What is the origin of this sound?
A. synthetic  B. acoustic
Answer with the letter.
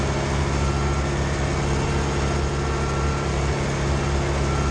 B